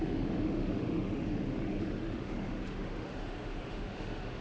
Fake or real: fake